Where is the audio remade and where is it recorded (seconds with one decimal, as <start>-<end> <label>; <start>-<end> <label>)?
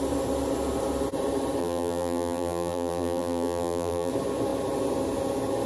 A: 0.0-1.6 recorded; 1.6-4.1 remade; 4.1-5.7 recorded